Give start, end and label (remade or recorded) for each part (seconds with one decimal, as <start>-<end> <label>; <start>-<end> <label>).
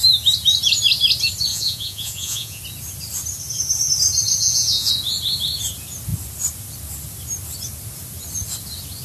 0.0-1.5 recorded; 1.5-2.6 remade; 2.6-4.4 recorded; 4.4-4.9 remade; 4.9-9.0 recorded